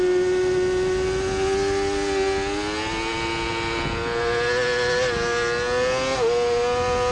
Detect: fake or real real